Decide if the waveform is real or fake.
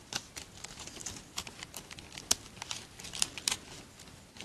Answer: real